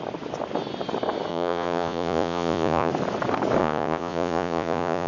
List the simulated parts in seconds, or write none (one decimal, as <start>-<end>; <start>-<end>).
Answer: 1.3-2.9; 3.6-5.1